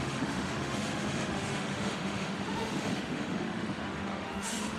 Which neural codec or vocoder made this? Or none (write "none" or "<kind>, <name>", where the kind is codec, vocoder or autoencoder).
autoencoder, DAC-VAE